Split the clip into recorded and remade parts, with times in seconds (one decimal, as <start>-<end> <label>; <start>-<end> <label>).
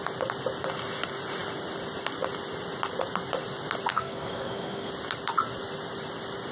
0.0-3.9 recorded; 3.9-4.9 remade; 4.9-6.5 recorded